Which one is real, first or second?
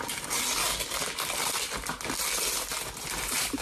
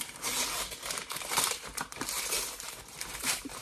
first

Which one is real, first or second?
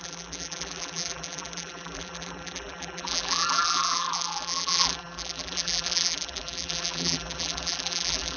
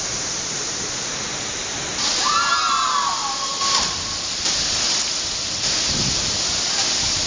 second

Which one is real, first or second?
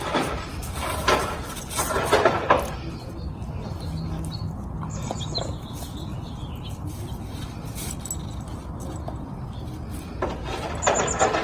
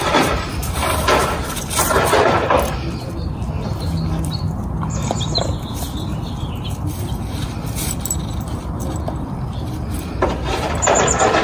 first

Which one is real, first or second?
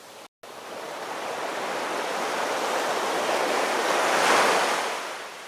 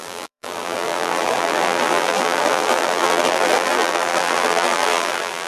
first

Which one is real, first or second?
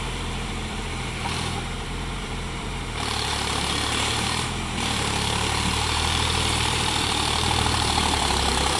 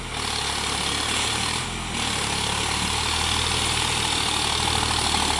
second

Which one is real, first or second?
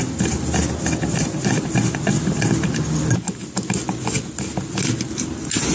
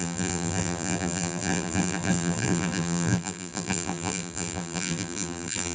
first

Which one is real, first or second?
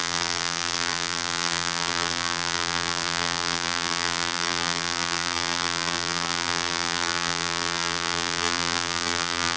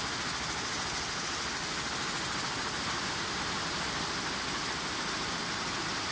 second